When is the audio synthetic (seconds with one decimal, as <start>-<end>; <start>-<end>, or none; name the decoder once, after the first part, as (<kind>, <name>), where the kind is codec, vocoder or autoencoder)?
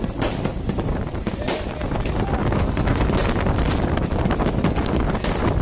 0.5-1.4 (vocoder, BigVGAN v2); 3.2-3.7